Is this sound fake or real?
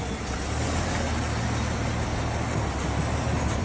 real